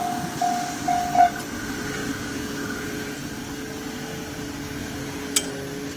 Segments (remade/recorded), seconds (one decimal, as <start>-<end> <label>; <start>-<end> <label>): 0.0-2.0 recorded; 2.0-3.4 remade; 3.4-4.8 recorded; 4.8-5.5 remade; 5.5-6.0 recorded